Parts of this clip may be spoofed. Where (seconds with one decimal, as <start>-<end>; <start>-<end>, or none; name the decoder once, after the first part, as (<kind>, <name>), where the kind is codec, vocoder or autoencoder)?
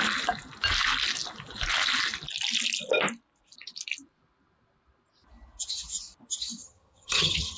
6.6-7.6 (vocoder, HiFi-GAN)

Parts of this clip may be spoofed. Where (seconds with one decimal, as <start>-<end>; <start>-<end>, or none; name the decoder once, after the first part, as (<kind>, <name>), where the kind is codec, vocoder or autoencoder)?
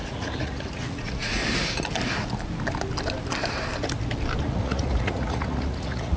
0.0-1.4 (vocoder, Vocos); 4.4-6.2